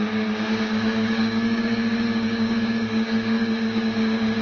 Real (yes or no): no